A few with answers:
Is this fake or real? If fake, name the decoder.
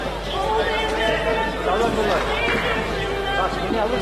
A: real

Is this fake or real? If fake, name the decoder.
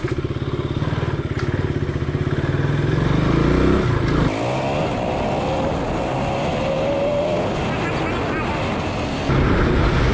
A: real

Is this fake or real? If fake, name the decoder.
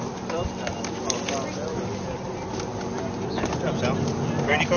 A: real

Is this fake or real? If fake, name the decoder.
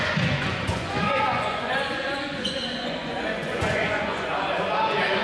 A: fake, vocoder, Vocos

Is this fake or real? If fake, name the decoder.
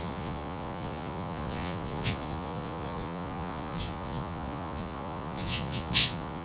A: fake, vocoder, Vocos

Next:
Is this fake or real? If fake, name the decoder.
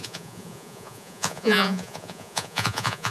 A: fake, vocoder, Vocos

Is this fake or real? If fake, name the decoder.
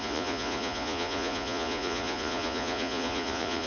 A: fake, vocoder, Vocos